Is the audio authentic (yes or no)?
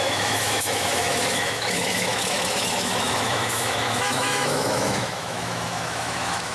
no